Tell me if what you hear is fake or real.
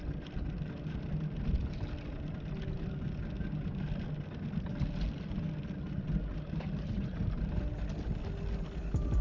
real